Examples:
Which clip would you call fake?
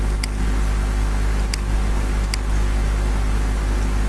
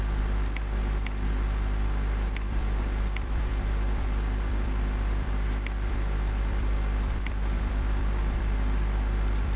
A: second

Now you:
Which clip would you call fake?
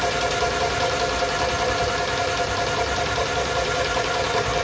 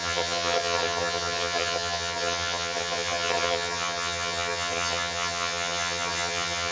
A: second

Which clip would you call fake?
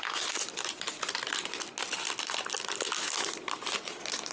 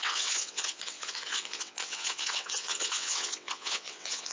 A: second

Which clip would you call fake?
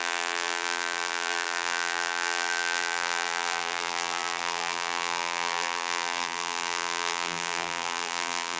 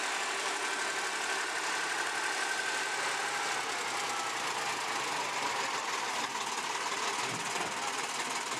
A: first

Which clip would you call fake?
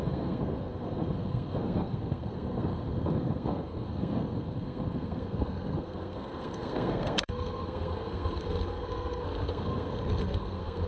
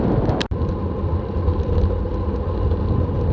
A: first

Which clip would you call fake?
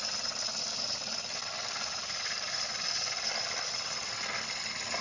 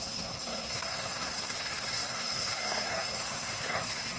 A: second